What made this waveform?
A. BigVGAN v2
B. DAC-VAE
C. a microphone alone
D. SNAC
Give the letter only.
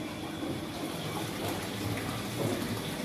A